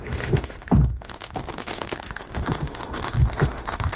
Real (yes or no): no